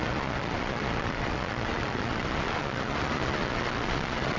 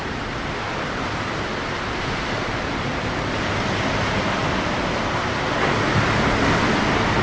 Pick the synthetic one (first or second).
first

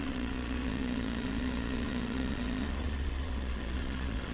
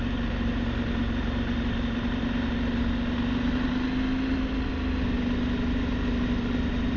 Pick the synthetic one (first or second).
first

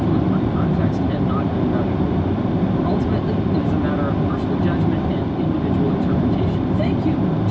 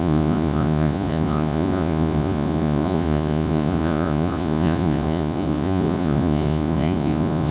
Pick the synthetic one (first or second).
second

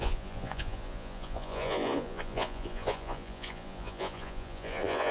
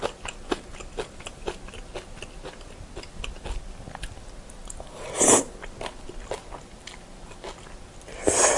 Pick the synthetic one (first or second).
first